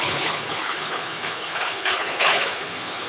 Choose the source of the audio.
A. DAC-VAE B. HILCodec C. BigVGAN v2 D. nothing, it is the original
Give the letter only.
B